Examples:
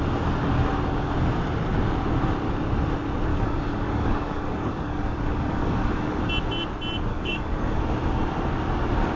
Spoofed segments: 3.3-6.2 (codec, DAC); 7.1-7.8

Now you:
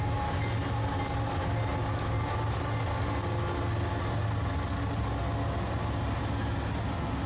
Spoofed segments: none

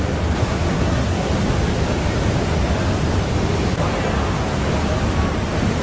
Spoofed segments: 0.4-1.3 (codec, SNAC)